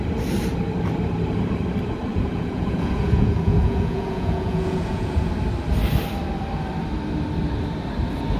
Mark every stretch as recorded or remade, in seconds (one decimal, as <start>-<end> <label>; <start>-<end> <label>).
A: 0.0-2.1 recorded; 2.1-5.3 remade; 5.3-8.4 recorded